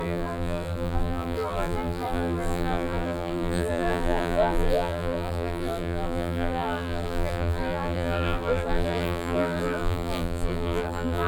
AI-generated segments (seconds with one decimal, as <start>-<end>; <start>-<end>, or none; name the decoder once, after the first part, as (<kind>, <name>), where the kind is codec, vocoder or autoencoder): 0.0-11.3 (vocoder, BigVGAN v2)